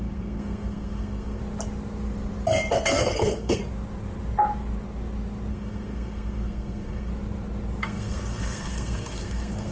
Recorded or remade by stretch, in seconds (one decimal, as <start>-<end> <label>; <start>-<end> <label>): 0.0-1.4 remade; 1.4-2.7 recorded; 2.7-3.6 remade; 3.6-5.5 recorded; 5.5-7.1 remade; 7.1-7.8 recorded; 7.8-9.7 remade